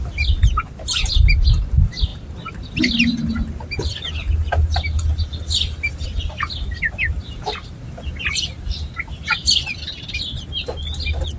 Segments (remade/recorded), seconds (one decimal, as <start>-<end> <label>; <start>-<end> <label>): 0.0-11.4 recorded